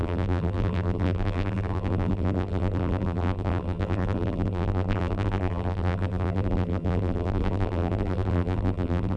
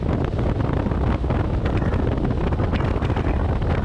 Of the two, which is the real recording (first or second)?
second